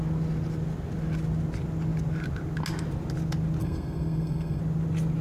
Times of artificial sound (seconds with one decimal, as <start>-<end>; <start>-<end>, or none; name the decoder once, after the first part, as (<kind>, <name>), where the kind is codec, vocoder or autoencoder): 3.6-4.6 (codec, SNAC)